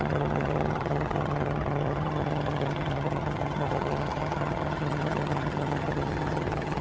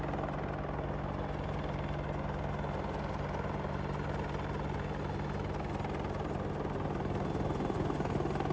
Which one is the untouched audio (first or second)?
second